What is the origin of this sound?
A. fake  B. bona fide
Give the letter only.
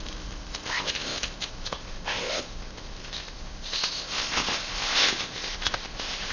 A